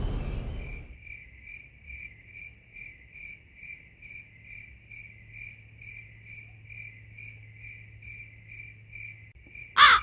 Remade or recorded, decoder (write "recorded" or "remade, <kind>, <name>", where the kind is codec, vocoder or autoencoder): recorded